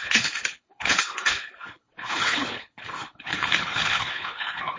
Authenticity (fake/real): fake